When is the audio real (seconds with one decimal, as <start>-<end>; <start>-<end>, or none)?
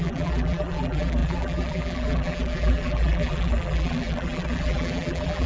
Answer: none